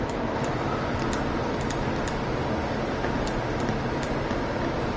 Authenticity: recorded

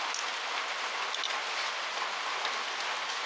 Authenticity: recorded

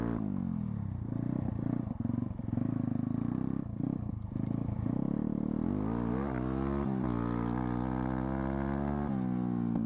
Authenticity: recorded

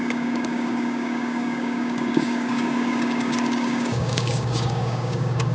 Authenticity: remade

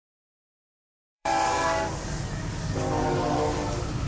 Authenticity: remade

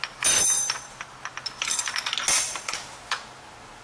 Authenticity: recorded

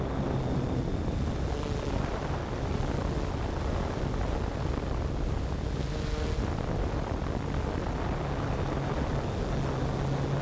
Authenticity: recorded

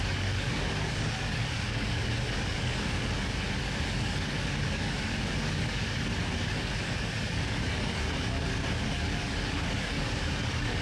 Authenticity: remade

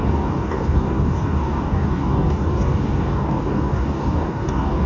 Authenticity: remade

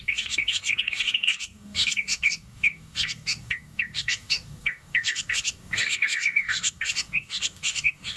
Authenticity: remade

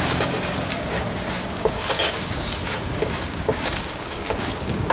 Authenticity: remade